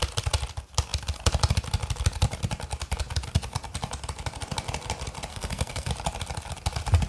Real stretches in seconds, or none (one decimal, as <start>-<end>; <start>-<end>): 0.0-5.3; 5.9-7.1